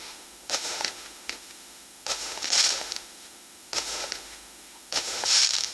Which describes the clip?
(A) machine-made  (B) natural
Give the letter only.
A